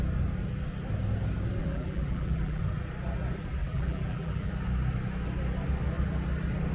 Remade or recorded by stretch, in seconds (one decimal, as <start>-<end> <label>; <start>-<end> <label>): 0.0-1.6 recorded; 1.6-2.6 remade; 2.6-3.6 recorded; 3.6-4.5 remade; 4.5-6.7 recorded